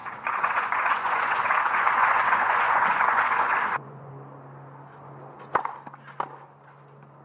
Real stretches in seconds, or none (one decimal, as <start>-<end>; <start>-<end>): 4.1-7.2